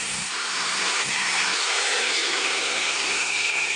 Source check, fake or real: fake